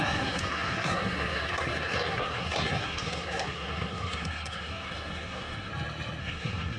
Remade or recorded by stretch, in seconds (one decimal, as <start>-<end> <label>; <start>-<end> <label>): 0.0-5.7 remade; 5.7-6.2 recorded; 6.2-6.8 remade